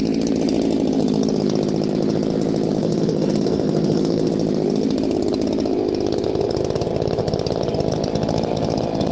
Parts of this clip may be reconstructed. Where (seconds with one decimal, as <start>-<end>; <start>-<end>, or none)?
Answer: 2.8-4.3